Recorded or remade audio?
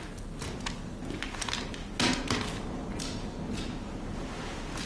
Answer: recorded